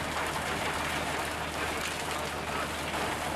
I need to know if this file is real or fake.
real